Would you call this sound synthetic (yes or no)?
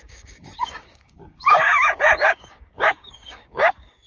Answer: yes